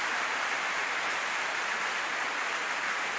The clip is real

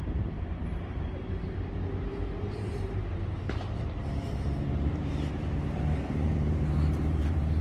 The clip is fake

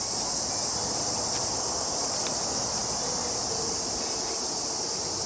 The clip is real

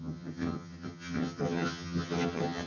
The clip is fake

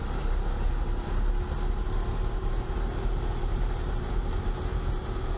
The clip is real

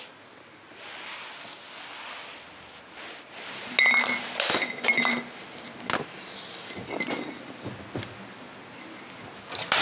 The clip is real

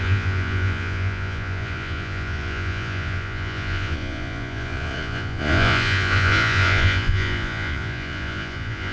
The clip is fake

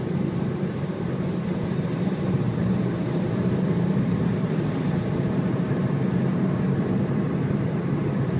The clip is fake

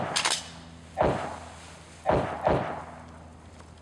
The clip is real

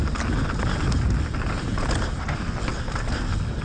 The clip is real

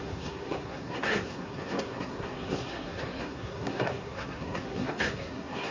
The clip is fake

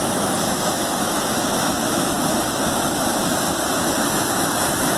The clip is fake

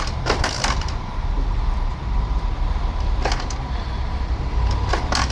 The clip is fake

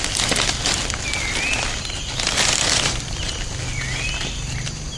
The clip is real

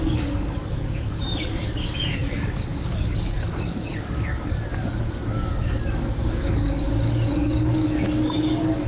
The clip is fake